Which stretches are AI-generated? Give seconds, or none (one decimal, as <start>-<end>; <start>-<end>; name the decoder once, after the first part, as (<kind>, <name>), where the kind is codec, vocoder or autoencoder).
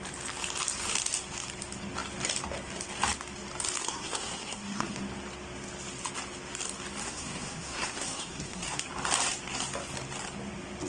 3.8-5.0 (codec, SNAC); 7.0-8.9